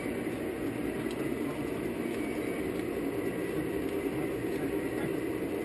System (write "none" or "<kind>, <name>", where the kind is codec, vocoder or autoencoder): none